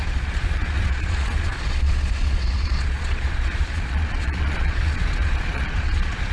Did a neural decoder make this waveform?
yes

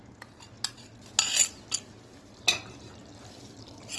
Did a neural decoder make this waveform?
no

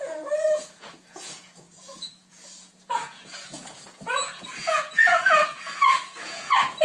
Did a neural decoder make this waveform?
yes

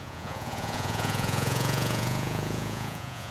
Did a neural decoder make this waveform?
yes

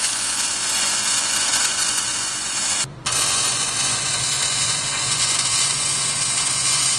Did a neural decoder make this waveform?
yes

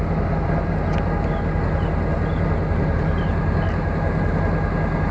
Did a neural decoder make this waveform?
no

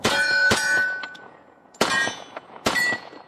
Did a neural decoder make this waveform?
yes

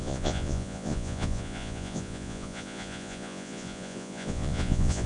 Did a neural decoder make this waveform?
yes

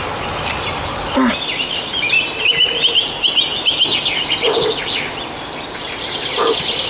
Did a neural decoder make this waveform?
no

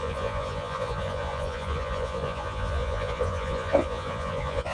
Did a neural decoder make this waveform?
yes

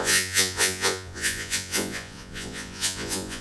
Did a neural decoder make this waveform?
yes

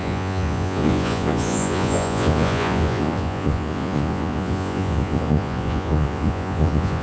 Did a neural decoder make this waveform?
yes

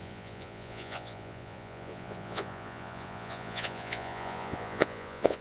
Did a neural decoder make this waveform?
yes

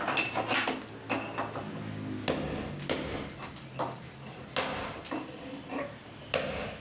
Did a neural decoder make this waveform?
no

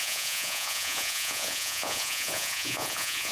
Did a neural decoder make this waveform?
yes